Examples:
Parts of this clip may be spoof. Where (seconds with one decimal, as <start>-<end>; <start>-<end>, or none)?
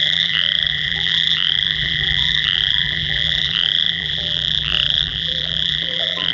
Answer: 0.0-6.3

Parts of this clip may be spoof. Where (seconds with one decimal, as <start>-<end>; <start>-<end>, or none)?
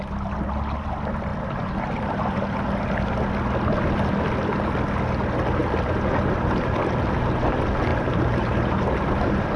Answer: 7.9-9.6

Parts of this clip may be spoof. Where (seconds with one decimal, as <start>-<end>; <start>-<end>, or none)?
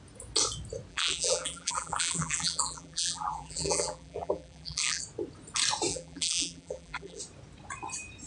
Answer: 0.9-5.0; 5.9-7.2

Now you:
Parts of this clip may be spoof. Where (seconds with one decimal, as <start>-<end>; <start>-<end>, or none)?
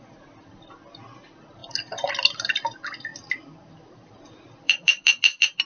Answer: 0.0-1.6; 2.1-3.1; 3.7-5.7